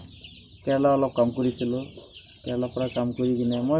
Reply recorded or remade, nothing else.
recorded